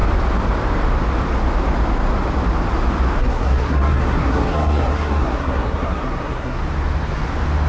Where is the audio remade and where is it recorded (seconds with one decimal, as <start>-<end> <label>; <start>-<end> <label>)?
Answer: 0.0-3.2 recorded; 3.2-6.6 remade; 6.6-7.7 recorded